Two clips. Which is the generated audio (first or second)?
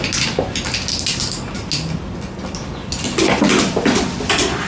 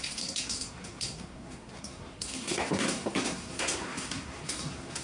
second